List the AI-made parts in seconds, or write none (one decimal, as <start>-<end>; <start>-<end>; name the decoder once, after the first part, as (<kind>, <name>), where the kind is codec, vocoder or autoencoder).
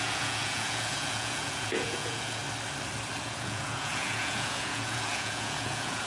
0.0-2.4 (vocoder, Vocos); 3.2-6.1